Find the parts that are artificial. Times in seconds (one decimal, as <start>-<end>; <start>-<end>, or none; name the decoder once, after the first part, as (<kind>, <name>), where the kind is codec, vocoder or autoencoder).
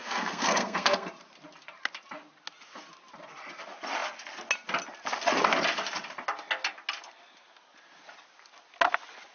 0.0-1.1 (codec, SNAC)